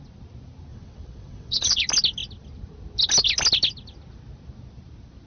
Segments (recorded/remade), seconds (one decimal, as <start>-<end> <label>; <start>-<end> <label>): 0.0-0.7 recorded; 0.7-1.8 remade; 1.8-5.3 recorded